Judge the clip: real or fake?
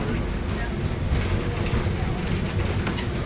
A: real